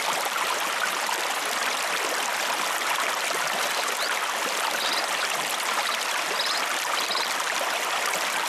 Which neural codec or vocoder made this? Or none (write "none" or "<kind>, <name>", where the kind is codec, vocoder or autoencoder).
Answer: none